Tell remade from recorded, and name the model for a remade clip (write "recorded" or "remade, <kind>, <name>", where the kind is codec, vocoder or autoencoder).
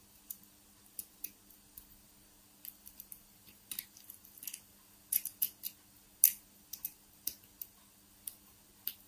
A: recorded